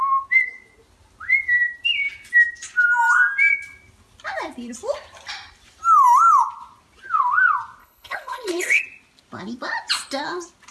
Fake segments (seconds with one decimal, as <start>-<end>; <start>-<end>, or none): 7.8-8.8